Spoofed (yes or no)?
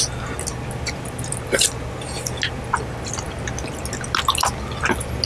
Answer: no